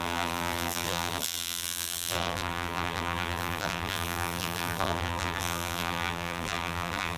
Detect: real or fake fake